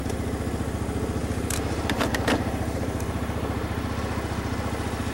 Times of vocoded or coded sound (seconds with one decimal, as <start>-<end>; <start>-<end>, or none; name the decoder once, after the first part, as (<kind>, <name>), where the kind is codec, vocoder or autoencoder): 1.2-4.0 (vocoder, BigVGAN v2)